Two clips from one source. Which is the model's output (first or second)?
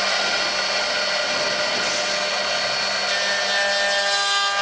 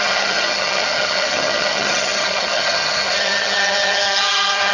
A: second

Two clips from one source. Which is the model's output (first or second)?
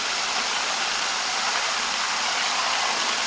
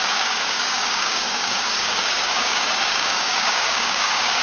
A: second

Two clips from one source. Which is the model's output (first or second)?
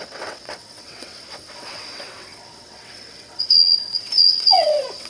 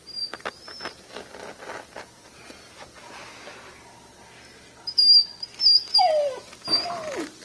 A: first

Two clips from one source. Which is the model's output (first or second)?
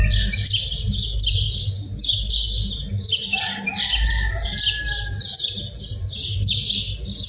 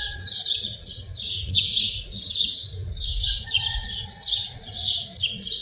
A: second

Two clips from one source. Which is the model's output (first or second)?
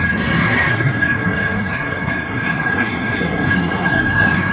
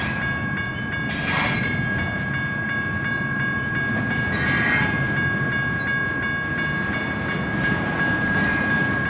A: first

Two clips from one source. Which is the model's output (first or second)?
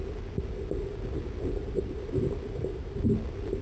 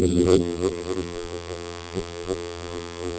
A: second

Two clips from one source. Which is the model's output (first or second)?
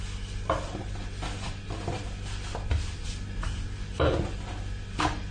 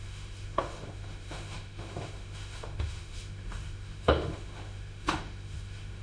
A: second